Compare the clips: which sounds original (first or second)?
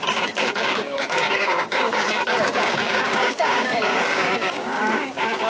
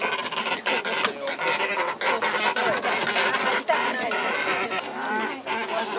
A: second